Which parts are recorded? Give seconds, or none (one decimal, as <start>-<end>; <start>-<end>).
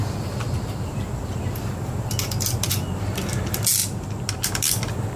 0.0-5.2